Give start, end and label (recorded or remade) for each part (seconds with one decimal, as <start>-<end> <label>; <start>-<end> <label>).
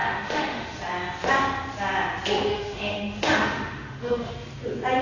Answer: 0.0-0.8 remade; 0.8-2.5 recorded; 2.5-4.3 remade; 4.3-5.0 recorded